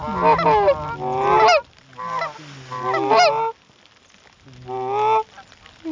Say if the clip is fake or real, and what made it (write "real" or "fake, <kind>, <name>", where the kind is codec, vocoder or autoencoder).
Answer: real